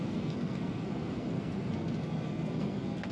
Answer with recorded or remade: remade